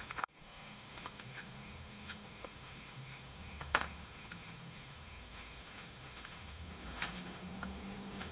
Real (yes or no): no